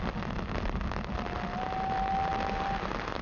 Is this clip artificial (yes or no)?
no